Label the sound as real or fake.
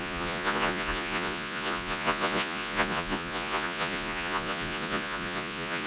fake